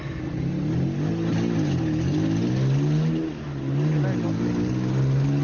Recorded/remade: recorded